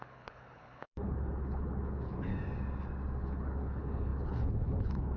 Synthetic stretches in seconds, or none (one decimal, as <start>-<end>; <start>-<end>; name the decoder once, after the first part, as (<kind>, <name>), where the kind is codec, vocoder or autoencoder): 0.0-2.3 (codec, HILCodec); 3.2-5.2